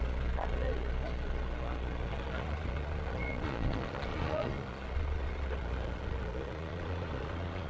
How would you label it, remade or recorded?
remade